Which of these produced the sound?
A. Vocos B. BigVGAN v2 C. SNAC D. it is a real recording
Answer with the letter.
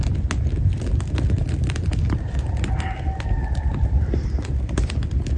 D